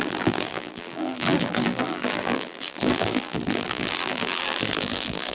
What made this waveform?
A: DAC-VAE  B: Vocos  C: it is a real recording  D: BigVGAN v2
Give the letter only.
D